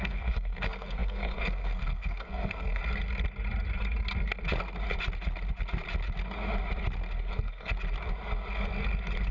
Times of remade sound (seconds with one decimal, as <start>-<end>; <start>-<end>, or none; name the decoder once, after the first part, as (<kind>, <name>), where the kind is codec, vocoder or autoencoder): 0.0-2.8 (codec, SNAC); 7.3-7.7